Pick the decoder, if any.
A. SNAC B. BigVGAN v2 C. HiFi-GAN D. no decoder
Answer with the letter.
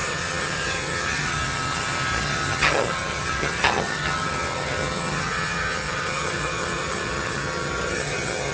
C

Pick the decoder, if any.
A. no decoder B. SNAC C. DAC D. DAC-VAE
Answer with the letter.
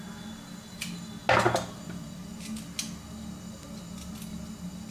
A